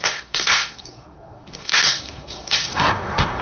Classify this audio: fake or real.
fake